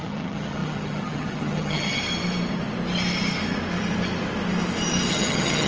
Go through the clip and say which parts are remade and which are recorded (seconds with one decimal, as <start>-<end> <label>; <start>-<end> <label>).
0.0-2.0 remade; 2.0-5.1 recorded; 5.1-5.7 remade